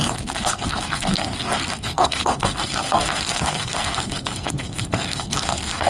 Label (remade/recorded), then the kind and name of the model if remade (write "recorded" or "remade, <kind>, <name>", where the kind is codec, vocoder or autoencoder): remade, codec, SNAC